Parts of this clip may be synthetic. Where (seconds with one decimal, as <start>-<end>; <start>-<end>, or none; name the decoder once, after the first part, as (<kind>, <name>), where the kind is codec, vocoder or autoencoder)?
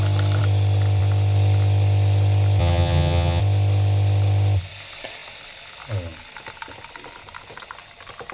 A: 2.6-3.4 (vocoder, HiFi-GAN)